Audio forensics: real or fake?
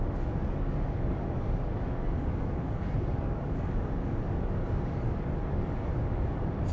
fake